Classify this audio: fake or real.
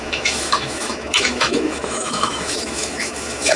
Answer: fake